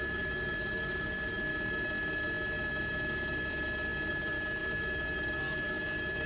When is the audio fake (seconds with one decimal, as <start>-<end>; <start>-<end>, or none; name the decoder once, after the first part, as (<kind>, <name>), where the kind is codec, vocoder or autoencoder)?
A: 0.0-1.5 (autoencoder, DAC-VAE); 4.1-6.3